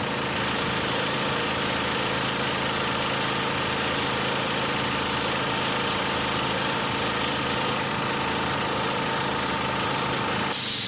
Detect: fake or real real